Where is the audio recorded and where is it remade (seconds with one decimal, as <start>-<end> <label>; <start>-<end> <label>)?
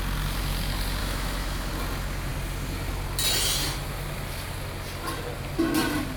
0.0-1.0 recorded; 1.0-1.7 remade; 1.7-6.2 recorded